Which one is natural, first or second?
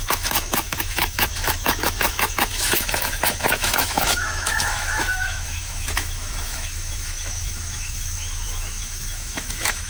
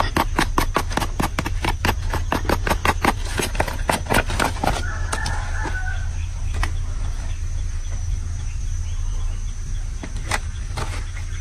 second